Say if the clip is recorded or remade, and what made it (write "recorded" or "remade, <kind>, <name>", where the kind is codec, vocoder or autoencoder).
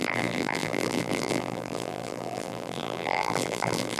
remade, vocoder, BigVGAN v2